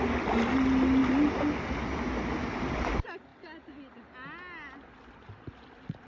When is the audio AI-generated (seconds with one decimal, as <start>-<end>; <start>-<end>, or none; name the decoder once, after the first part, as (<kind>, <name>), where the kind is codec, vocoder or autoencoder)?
none